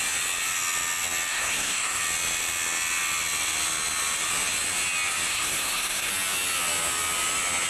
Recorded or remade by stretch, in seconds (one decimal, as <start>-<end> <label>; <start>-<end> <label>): 0.0-1.3 recorded; 1.3-2.0 remade; 2.0-5.3 recorded; 5.3-6.1 remade; 6.1-7.7 recorded